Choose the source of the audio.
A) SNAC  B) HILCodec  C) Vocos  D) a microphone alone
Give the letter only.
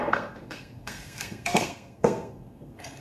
A